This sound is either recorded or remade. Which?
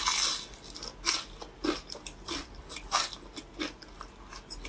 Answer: recorded